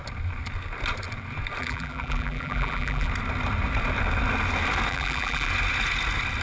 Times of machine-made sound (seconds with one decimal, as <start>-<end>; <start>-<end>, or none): 1.6-3.1; 4.9-5.5